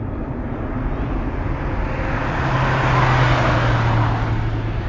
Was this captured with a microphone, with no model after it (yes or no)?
yes